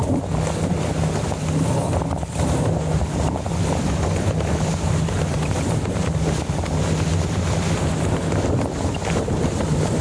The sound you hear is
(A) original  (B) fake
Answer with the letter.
A